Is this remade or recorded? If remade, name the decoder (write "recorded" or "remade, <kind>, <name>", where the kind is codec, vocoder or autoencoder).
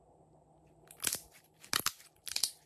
recorded